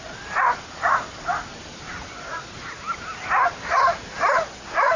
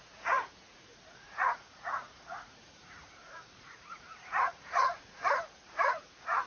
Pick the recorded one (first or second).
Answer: first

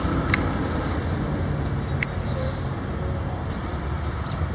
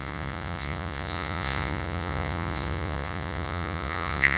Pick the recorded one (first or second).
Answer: first